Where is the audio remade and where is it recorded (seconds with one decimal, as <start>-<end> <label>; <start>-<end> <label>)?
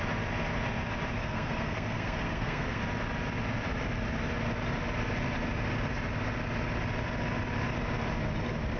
0.0-1.2 recorded; 1.2-2.8 remade; 2.8-8.8 recorded